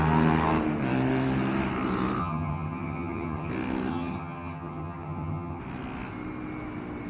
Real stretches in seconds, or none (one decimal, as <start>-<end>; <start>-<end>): 0.0-2.2; 3.5-3.9; 5.6-7.1

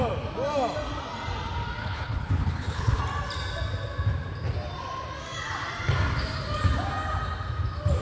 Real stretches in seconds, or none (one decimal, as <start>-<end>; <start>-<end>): 0.0-1.8; 3.0-8.0

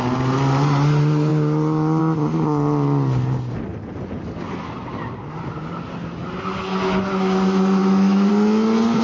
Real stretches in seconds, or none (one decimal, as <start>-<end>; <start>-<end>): 0.0-7.8; 8.3-9.0

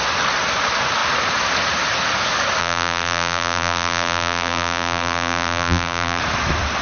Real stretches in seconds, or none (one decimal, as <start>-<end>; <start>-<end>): 0.0-2.6; 6.2-6.8

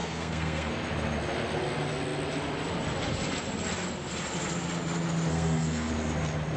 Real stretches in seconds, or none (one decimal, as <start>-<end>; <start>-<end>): 0.7-5.3; 5.9-6.6

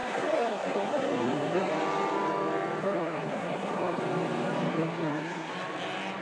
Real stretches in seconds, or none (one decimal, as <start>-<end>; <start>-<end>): 1.7-2.8; 4.0-4.7; 5.5-6.2

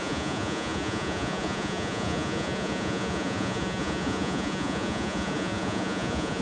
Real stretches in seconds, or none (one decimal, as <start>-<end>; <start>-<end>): none